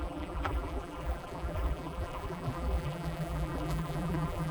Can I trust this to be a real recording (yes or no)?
no